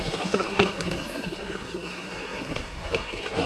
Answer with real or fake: fake